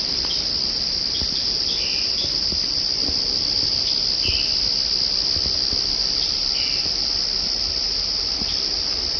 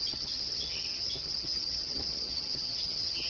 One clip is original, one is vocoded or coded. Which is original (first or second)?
first